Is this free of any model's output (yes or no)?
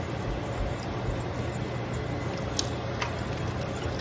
yes